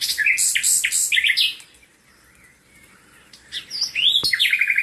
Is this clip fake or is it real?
real